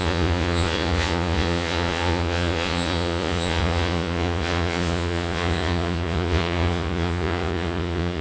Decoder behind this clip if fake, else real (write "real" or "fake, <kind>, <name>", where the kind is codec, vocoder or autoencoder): fake, vocoder, Vocos